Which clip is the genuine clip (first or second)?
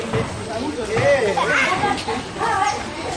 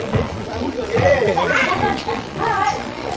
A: first